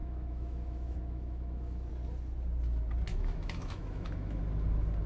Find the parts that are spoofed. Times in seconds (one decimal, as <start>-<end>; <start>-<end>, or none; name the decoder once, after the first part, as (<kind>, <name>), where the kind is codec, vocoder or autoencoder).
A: 0.0-1.9 (autoencoder, DAC-VAE); 3.1-4.4